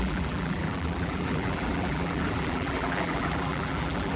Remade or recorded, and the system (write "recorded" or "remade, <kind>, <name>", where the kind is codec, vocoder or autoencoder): remade, vocoder, BigVGAN v2